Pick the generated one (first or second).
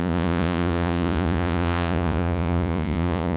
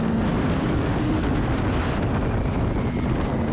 first